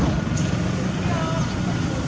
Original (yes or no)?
yes